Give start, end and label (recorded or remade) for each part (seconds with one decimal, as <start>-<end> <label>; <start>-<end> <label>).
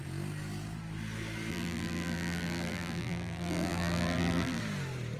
0.0-1.5 recorded; 1.5-4.6 remade; 4.6-5.2 recorded